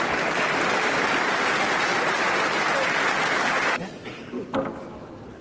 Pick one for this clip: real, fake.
real